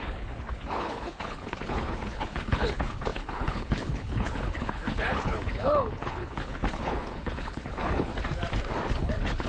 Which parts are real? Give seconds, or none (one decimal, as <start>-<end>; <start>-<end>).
8.1-9.0